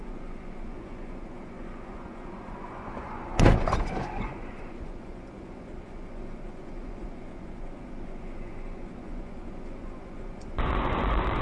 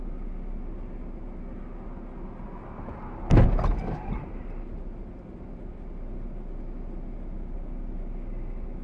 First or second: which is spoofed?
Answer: first